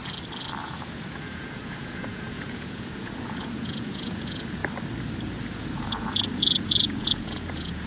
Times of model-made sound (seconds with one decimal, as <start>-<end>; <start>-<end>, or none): 0.6-4.6; 5.2-7.9